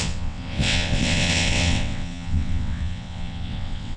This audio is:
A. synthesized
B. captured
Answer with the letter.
A